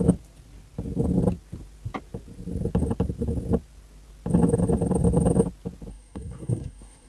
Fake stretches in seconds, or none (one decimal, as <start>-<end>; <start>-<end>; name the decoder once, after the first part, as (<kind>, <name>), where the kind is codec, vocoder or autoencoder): 5.9-7.1 (codec, SNAC)